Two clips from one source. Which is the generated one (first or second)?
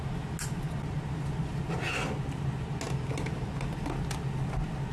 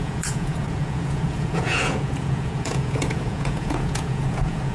second